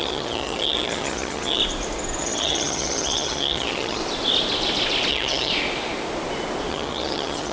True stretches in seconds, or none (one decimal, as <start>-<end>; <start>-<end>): 1.6-2.2; 4.0-5.1; 5.5-6.7